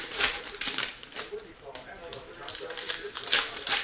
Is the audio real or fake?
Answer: fake